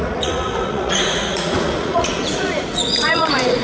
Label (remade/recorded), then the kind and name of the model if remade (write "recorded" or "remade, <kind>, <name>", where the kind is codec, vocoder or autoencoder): remade, vocoder, Vocos